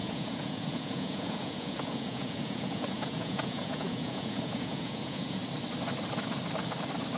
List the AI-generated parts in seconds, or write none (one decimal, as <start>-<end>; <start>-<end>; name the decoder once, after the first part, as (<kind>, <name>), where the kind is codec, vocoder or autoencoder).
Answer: 0.0-5.4 (vocoder, Vocos)